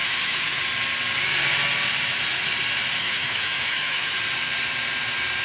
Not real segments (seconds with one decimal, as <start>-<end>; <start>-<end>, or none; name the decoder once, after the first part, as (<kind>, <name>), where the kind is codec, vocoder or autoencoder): 0.0-0.6 (autoencoder, DAC-VAE); 3.0-4.2